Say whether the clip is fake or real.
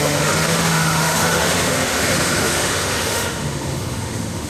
fake